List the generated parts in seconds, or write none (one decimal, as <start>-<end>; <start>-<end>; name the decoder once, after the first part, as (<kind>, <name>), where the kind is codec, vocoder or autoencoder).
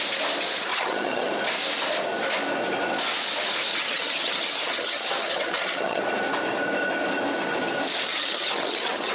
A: 0.7-1.3 (vocoder, HiFi-GAN); 3.7-6.0; 8.1-9.1